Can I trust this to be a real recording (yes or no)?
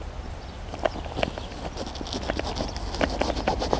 yes